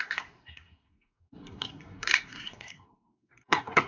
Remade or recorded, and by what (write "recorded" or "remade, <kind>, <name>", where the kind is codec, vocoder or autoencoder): remade, codec, SNAC